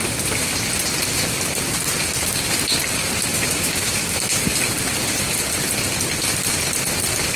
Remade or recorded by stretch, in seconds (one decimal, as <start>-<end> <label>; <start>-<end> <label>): 0.0-3.3 recorded; 3.3-4.4 remade; 4.4-7.4 recorded

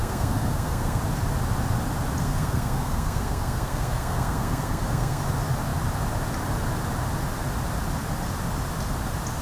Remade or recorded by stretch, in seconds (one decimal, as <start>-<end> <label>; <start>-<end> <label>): 0.0-1.0 remade; 1.0-2.2 recorded; 2.2-5.2 remade; 5.2-9.4 recorded

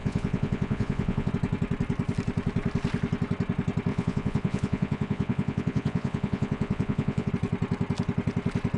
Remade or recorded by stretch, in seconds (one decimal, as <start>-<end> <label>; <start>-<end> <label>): 0.0-1.3 remade; 1.3-3.9 recorded; 3.9-7.3 remade; 7.3-8.8 recorded

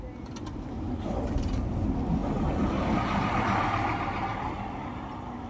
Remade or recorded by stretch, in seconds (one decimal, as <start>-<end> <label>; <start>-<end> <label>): 0.0-5.5 recorded

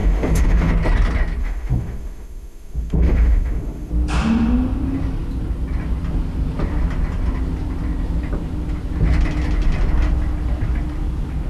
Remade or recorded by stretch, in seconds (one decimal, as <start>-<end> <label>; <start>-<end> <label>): 0.0-0.7 remade; 0.7-1.4 recorded; 1.4-3.9 remade; 3.9-11.5 recorded

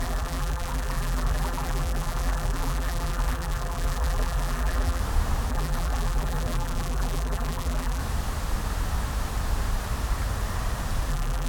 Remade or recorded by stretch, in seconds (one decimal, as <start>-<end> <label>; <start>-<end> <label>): 0.0-5.0 remade; 5.0-5.5 recorded; 5.5-8.0 remade; 8.0-11.1 recorded; 11.1-11.5 remade

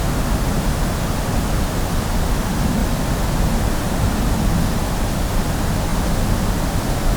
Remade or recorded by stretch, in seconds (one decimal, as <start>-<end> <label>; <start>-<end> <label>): 0.0-7.2 recorded